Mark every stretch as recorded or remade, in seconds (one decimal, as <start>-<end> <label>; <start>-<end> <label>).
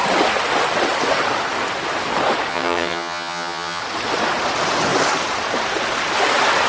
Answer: 0.0-2.5 recorded; 2.5-3.8 remade; 3.8-6.7 recorded